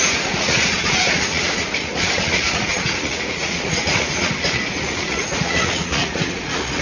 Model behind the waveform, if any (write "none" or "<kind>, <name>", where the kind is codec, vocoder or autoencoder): vocoder, Vocos